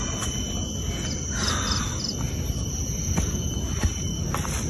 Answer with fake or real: real